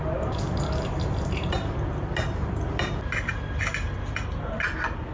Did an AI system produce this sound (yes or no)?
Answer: no